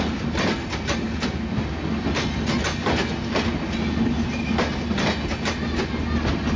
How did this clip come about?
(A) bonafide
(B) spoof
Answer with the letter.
A